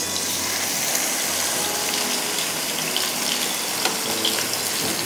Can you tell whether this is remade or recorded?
recorded